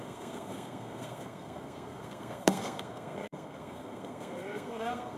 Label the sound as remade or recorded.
remade